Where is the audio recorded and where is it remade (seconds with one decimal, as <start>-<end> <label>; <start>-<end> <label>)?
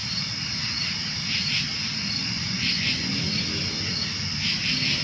0.0-2.2 recorded; 2.2-3.1 remade; 3.1-5.0 recorded